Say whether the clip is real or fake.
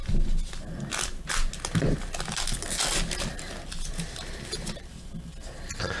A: real